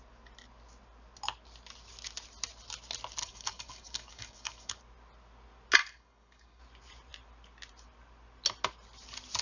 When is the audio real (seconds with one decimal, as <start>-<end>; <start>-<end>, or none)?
0.0-3.2; 4.8-5.8; 6.6-9.4